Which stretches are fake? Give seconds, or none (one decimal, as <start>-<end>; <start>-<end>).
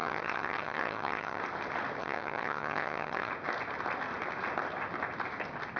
0.0-1.4; 2.0-3.3